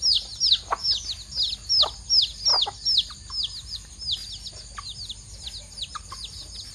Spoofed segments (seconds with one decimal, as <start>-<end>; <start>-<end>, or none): none